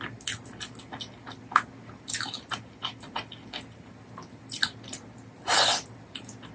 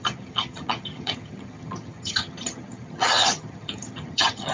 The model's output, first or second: second